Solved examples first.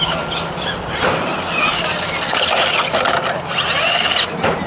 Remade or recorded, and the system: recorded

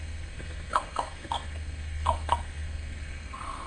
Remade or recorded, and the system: remade, codec, SNAC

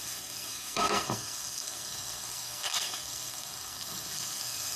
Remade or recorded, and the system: remade, codec, SNAC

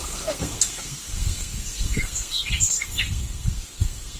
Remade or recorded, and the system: remade, codec, SNAC